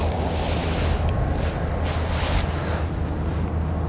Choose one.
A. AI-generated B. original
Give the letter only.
B